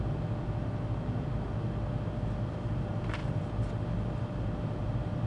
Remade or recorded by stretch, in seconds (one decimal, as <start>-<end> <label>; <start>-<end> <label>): 0.0-3.2 recorded; 3.2-3.7 remade; 3.7-5.3 recorded

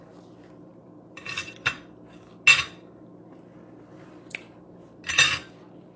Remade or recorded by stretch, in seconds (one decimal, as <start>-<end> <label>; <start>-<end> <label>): 0.0-0.7 recorded; 0.7-1.8 remade; 1.8-6.0 recorded